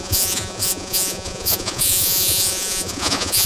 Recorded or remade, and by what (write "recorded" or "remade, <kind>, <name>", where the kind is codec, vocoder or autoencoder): remade, vocoder, Vocos